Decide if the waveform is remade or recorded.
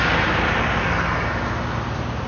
recorded